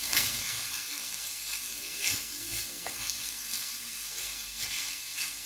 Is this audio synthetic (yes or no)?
yes